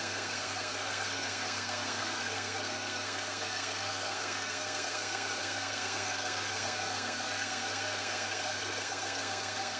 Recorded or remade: remade